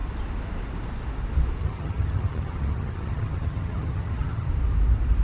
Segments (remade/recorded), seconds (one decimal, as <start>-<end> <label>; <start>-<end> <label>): 0.0-1.6 recorded; 1.6-4.5 remade; 4.5-5.2 recorded